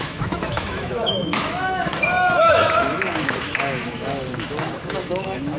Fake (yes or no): yes